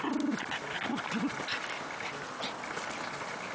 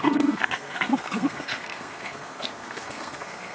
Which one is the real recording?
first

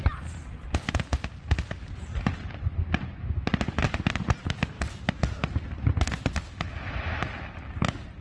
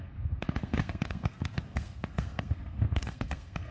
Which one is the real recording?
first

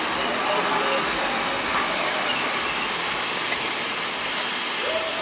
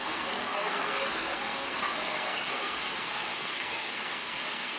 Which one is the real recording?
first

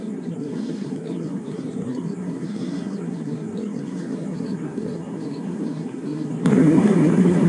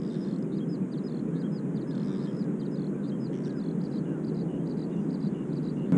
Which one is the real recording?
second